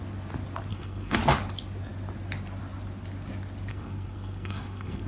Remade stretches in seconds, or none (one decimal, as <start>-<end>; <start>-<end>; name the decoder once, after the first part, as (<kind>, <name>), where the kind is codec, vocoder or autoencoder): 0.7-1.2 (codec, SNAC); 3.7-5.1